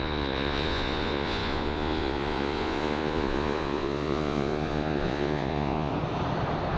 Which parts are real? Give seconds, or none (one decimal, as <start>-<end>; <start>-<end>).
5.9-6.8